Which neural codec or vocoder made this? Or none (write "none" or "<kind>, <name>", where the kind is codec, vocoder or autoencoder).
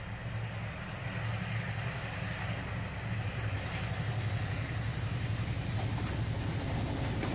none